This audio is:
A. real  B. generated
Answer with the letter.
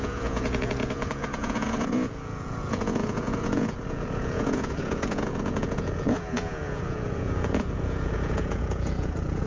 B